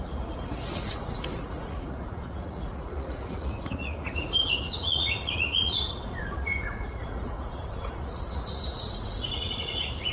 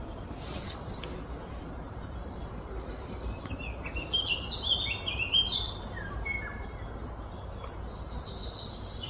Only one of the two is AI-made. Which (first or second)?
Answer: first